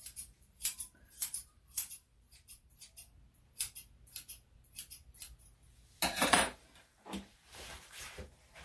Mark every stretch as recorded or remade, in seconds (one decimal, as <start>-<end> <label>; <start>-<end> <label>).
0.0-2.7 remade; 2.7-6.1 recorded; 6.1-8.6 remade